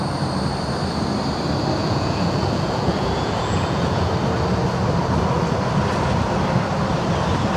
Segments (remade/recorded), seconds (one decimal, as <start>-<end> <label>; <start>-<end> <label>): 0.0-1.8 recorded; 1.8-4.1 remade; 4.1-7.6 recorded